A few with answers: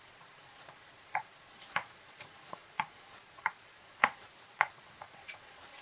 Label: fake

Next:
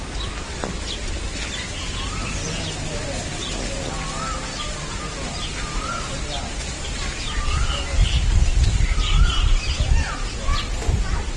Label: real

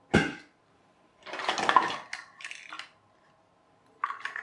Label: real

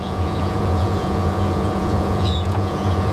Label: fake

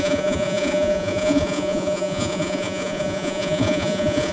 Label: fake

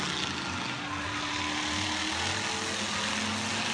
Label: real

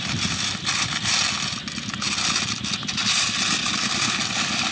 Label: real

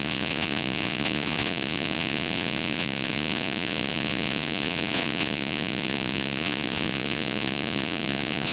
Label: fake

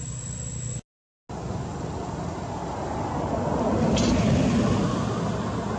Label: real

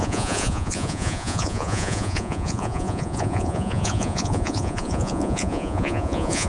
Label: fake